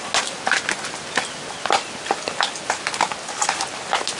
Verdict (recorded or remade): recorded